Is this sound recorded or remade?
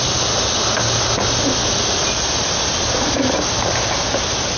recorded